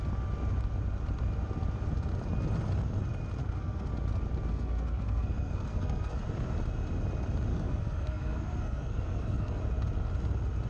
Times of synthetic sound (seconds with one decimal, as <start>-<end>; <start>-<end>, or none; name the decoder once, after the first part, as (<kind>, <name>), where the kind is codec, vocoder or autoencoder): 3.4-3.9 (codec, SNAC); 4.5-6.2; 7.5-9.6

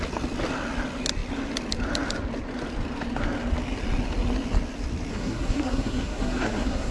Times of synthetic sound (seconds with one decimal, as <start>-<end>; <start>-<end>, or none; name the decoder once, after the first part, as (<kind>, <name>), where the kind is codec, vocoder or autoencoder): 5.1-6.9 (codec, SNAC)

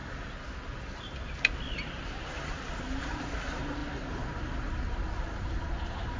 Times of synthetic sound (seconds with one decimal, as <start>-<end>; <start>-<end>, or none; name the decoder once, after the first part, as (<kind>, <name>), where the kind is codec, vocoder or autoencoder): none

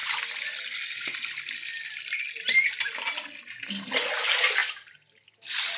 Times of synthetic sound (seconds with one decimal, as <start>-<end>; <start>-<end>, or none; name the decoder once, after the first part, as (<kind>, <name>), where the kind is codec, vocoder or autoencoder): none

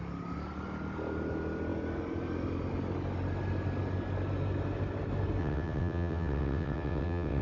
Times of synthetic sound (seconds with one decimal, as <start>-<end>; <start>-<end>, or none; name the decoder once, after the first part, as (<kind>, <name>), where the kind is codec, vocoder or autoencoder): 5.4-7.4 (vocoder, WaveNeXt)

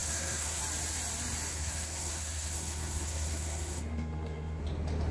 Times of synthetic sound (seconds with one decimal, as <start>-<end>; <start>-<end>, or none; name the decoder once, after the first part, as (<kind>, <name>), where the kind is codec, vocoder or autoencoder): 0.0-0.6 (codec, SNAC); 1.5-4.6

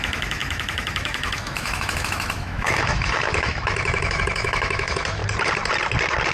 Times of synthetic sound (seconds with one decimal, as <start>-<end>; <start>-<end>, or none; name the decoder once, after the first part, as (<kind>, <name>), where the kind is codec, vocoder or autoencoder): 0.0-5.2 (autoencoder, DAC-VAE)

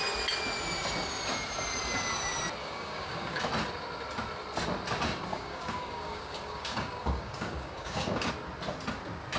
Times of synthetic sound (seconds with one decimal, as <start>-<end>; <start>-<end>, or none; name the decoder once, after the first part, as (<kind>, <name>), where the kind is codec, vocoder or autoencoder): 2.6-3.4 (codec, DAC); 5.3-8.3